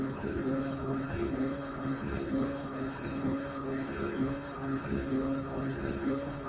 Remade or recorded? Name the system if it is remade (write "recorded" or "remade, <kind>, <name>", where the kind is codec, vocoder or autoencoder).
remade, codec, HILCodec